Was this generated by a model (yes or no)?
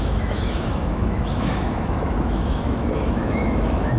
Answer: yes